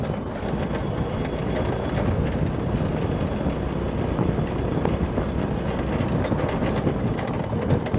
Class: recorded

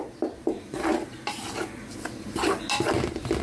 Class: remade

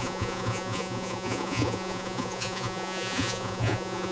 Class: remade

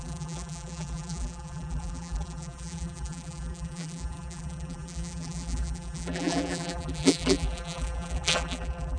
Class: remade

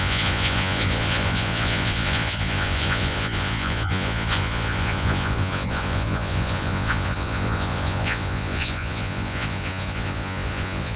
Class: remade